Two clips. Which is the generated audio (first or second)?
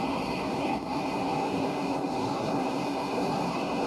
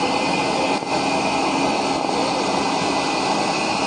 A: first